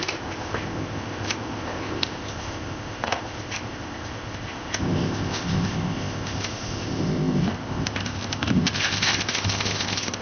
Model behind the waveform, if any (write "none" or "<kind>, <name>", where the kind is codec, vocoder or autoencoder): codec, ZipCodec